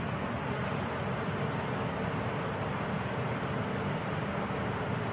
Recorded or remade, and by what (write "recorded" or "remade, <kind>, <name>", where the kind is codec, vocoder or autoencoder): recorded